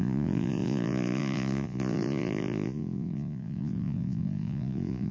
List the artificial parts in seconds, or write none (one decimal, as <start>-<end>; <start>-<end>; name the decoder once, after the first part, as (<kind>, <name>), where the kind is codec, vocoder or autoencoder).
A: 0.0-5.1 (vocoder, Vocos)